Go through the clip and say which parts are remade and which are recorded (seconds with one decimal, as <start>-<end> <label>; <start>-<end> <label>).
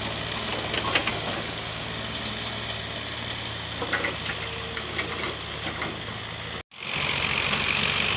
0.0-1.0 recorded; 1.0-1.8 remade; 1.8-8.2 recorded